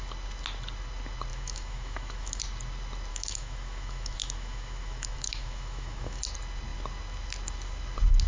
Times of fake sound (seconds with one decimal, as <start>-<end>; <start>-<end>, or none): 1.3-2.4; 3.1-6.2